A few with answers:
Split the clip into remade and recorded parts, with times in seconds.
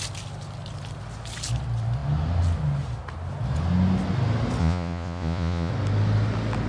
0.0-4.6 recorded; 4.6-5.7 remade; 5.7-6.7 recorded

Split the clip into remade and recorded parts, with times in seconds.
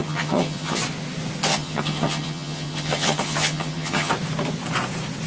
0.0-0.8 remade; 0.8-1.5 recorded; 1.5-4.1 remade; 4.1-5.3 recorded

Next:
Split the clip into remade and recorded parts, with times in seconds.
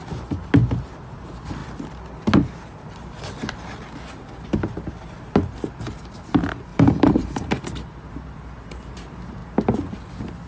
0.0-6.7 recorded; 6.7-7.6 remade; 7.6-10.5 recorded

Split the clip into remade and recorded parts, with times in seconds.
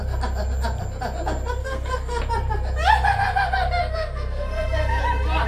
0.0-1.6 recorded; 1.6-2.2 remade; 2.2-3.8 recorded; 3.8-5.0 remade; 5.0-5.5 recorded